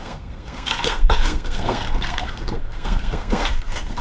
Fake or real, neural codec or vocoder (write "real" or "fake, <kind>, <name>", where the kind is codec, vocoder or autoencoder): fake, codec, SNAC